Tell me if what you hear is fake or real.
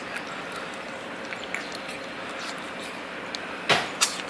real